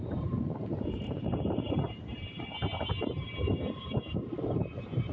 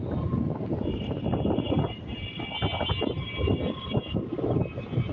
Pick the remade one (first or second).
first